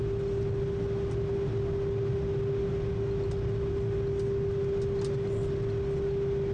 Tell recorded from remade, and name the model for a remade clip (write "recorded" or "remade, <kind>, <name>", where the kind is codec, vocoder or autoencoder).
recorded